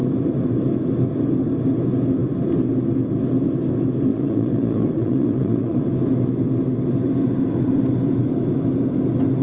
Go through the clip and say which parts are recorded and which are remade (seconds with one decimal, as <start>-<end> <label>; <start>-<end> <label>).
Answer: 0.0-4.1 recorded; 4.1-5.8 remade; 5.8-9.4 recorded